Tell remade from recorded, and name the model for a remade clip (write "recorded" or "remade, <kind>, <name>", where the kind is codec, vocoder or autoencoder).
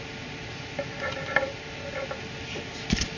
recorded